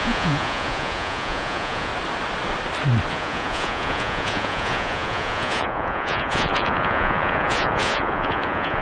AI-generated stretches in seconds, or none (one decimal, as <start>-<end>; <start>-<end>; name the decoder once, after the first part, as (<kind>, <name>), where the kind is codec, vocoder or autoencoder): 0.0-1.9 (vocoder, Vocos); 3.1-8.8